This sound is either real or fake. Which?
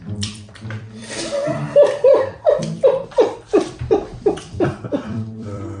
fake